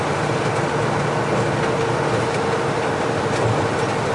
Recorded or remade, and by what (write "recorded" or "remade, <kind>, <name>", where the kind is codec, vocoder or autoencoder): recorded